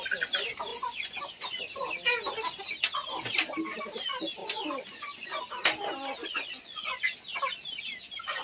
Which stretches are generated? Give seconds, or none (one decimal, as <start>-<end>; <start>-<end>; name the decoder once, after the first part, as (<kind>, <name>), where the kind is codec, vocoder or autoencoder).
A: 0.7-1.6 (vocoder, Vocos); 4.4-5.4; 6.2-7.0

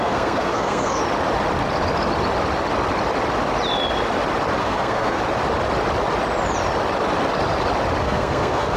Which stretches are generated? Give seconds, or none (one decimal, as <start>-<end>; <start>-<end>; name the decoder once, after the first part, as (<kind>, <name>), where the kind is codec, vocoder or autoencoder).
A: 0.0-1.0 (codec, SNAC); 4.6-5.2; 8.0-8.8

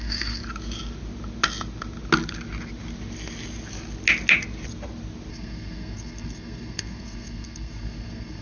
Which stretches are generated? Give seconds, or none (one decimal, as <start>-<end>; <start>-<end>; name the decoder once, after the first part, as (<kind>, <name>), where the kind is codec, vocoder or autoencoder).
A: 0.0-0.4 (codec, SNAC); 5.3-8.4

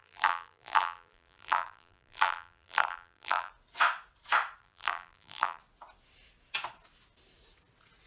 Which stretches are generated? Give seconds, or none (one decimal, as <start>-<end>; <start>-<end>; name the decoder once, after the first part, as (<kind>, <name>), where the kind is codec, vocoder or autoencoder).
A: 0.0-3.5 (vocoder, BigVGAN v2); 4.6-5.6

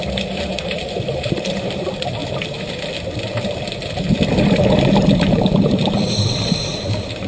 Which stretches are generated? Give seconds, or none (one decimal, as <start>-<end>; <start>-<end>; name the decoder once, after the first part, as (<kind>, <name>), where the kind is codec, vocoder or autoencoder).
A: 0.0-2.2 (vocoder, BigVGAN v2); 4.9-7.3

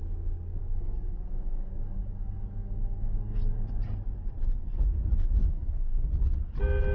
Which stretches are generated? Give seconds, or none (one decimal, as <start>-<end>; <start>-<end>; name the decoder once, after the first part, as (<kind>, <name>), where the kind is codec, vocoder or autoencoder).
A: 0.6-3.8 (codec, DAC); 5.4-6.1

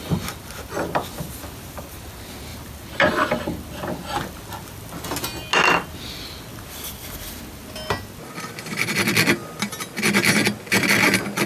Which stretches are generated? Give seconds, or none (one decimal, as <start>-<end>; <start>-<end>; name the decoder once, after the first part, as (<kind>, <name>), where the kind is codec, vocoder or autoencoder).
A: none

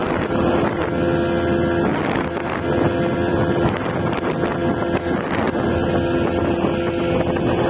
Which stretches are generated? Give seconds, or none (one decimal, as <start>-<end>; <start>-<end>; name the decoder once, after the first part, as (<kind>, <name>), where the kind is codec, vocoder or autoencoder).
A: none